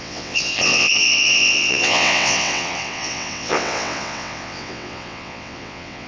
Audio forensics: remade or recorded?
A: remade